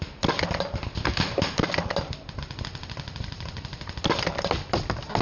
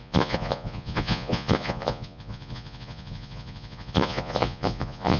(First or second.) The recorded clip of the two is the first